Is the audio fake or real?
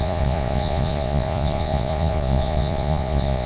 fake